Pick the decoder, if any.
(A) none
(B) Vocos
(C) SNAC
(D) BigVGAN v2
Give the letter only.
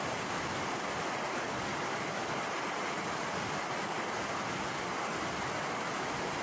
A